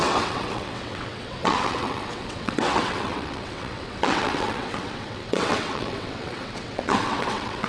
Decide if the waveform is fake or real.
fake